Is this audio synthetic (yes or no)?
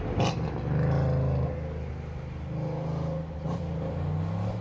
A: no